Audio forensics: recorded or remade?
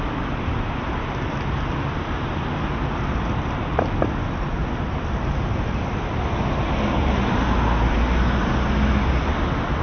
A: recorded